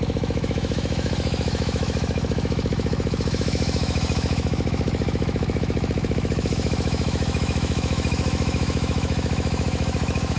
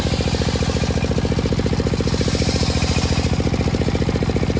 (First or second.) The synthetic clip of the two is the first